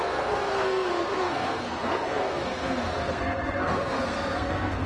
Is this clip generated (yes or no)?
yes